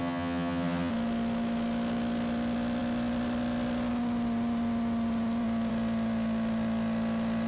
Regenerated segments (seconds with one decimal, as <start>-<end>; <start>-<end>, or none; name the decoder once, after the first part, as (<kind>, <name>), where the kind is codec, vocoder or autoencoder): 0.0-0.9 (vocoder, HiFi-GAN)